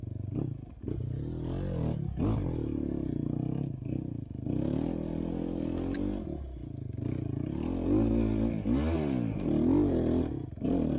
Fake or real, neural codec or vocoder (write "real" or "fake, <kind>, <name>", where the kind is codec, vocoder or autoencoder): real